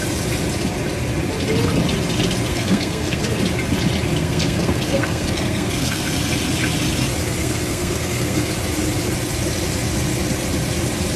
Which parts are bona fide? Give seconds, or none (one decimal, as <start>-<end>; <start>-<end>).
0.0-2.5; 3.2-4.2; 6.1-7.4; 8.5-11.2